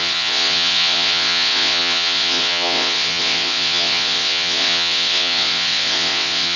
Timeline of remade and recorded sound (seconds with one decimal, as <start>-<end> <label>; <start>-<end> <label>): 0.0-6.6 remade